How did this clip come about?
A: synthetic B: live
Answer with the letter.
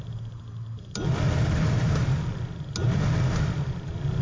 B